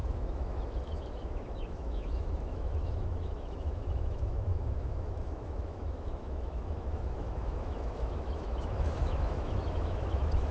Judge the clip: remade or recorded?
remade